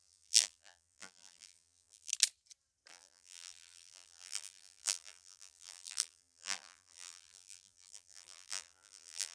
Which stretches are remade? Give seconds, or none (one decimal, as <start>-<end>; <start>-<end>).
0.0-2.1; 2.9-9.3